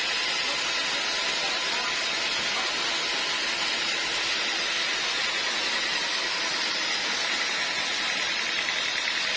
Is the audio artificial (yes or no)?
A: no